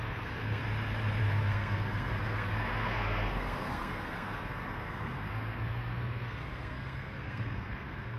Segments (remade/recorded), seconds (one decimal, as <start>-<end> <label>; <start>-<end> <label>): 0.0-0.6 remade; 0.6-1.2 recorded; 1.2-8.2 remade